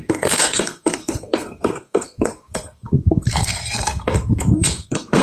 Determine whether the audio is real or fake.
fake